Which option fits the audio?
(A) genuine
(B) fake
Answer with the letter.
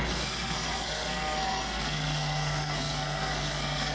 B